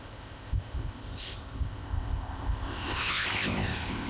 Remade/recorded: remade